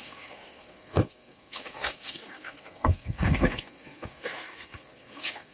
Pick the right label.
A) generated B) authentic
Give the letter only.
A